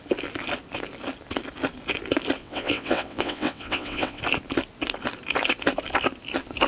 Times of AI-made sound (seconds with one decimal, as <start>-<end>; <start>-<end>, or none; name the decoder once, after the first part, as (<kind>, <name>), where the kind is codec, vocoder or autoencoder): 2.4-4.2 (vocoder, WaveNeXt)